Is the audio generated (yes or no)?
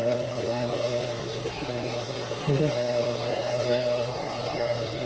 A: yes